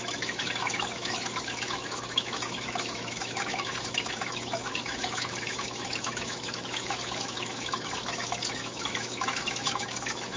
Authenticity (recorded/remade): remade